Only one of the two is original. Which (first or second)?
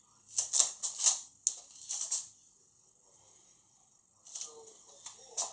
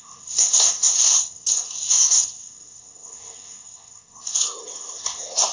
first